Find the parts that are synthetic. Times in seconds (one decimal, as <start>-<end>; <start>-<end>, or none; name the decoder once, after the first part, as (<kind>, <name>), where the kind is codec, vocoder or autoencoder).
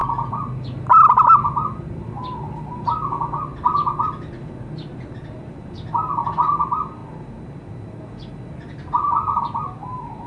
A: none